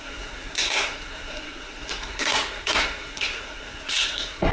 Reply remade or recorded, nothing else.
remade